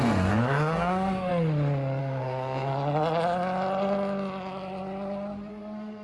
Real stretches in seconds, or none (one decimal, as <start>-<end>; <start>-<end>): 1.3-2.0; 2.7-5.5